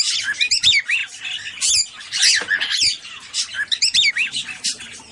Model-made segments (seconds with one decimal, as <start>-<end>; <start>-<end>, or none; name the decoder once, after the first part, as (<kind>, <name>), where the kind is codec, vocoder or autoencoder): none